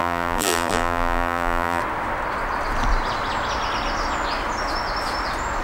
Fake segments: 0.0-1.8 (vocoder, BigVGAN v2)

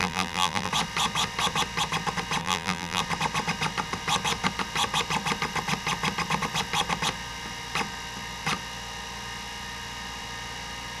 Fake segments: 0.0-0.7 (vocoder, BigVGAN v2); 2.4-3.0

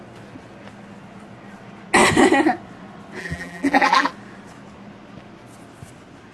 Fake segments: 3.2-4.1 (vocoder, BigVGAN v2)

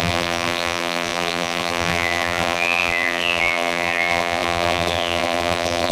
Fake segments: 0.0-5.9 (vocoder, BigVGAN v2)

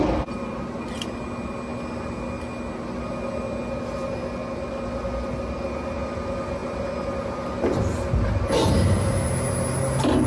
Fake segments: none

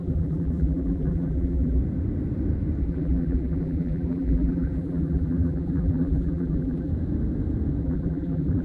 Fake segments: 0.0-1.8 (vocoder, BigVGAN v2); 2.8-6.9; 7.8-8.6

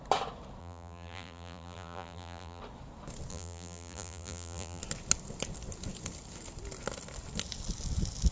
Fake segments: 0.6-2.6 (vocoder, BigVGAN v2); 3.3-4.8

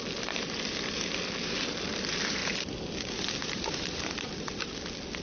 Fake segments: 3.4-4.7 (vocoder, BigVGAN v2)